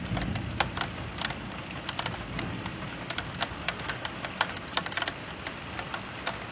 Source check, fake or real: real